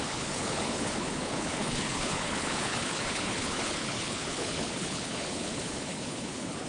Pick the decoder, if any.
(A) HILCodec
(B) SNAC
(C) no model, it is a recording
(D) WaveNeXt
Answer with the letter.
A